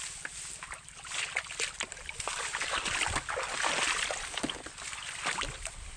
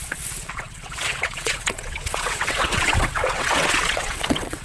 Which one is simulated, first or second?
second